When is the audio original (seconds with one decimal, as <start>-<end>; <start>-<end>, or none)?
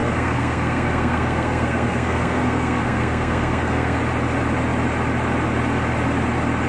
4.0-6.7